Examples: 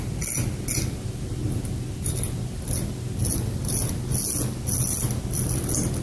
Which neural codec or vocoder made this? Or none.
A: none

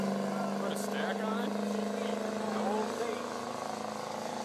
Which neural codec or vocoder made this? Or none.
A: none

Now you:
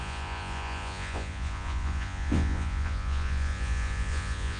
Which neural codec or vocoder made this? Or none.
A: vocoder, Vocos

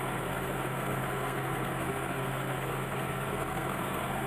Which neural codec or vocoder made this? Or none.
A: codec, SNAC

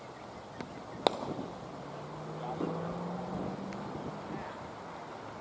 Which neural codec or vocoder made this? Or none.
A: none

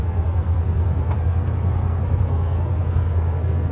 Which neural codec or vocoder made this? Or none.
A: codec, SNAC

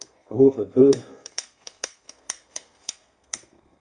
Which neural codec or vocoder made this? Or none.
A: codec, SNAC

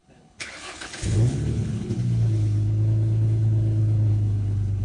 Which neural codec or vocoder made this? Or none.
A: codec, HILCodec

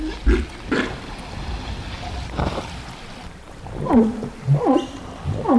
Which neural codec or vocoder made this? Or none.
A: none